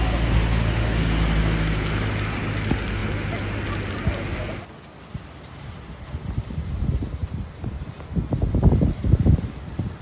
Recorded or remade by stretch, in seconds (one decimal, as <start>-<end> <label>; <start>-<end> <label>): 0.0-7.2 recorded; 7.2-8.0 remade; 8.0-10.0 recorded